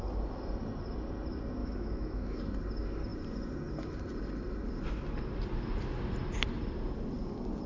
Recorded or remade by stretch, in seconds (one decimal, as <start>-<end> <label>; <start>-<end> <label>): 0.0-1.6 recorded; 1.6-2.4 remade; 2.4-7.7 recorded